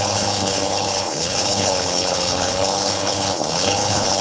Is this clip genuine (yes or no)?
no